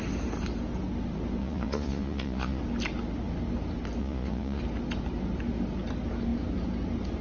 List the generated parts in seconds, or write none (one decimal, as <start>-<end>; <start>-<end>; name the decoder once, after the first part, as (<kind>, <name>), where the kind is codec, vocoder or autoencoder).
1.4-2.6 (vocoder, Vocos); 4.0-4.6